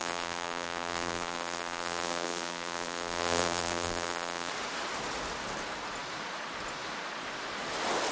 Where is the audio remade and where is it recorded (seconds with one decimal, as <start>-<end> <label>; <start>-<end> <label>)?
0.0-4.5 remade; 4.5-8.1 recorded